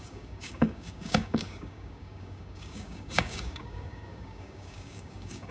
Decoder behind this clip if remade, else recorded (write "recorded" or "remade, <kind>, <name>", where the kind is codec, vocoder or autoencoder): remade, codec, DAC